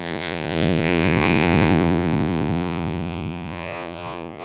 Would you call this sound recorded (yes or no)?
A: no